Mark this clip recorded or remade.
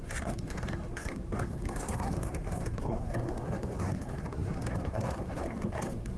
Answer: remade